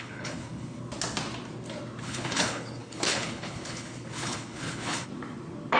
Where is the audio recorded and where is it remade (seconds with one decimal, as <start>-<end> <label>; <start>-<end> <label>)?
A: 0.0-0.8 remade; 0.8-2.0 recorded; 2.0-5.1 remade; 5.1-5.8 recorded